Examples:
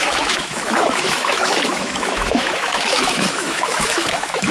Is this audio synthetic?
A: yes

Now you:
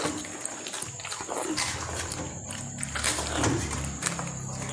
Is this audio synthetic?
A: no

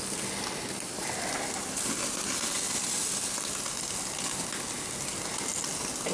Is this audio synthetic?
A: no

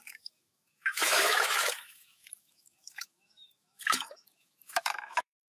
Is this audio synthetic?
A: yes